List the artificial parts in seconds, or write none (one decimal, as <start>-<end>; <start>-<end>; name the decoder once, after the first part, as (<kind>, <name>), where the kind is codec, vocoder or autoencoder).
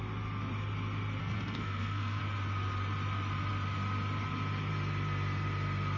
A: 1.2-2.2 (codec, SNAC)